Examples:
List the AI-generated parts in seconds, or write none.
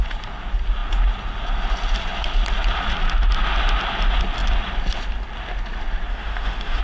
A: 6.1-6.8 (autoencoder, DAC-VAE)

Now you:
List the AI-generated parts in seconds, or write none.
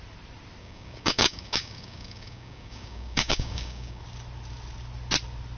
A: 0.6-4.0 (codec, DAC)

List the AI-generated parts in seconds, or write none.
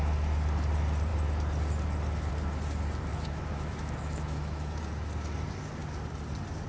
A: 3.1-4.8 (autoencoder, DAC-VAE)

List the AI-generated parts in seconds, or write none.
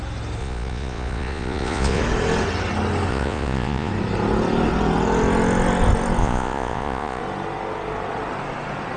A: 0.4-2.0 (vocoder, Vocos); 3.1-3.9; 6.2-7.2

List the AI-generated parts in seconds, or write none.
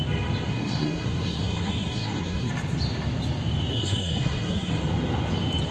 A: 0.5-2.5 (codec, SNAC); 3.7-4.8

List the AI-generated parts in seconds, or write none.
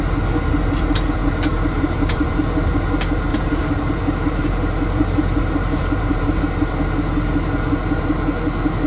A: 1.5-2.4 (vocoder, BigVGAN v2); 3.3-6.4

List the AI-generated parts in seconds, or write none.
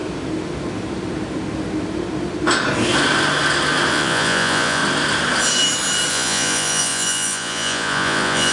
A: 3.9-4.8 (vocoder, Vocos); 6.1-8.5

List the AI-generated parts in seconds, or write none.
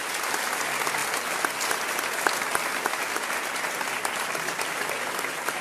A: none